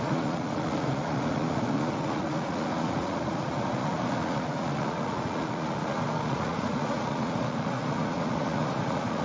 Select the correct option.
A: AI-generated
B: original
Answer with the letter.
A